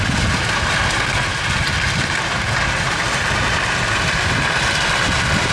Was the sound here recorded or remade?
remade